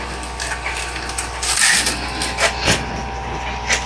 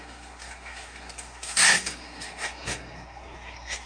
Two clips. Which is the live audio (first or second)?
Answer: first